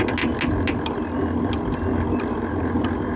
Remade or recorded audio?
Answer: recorded